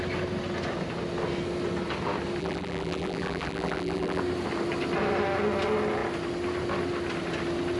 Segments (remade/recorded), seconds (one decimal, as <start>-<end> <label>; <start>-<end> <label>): 0.0-2.4 recorded; 2.4-4.2 remade; 4.2-7.8 recorded